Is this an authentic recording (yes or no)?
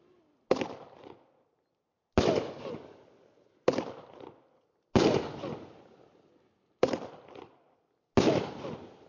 yes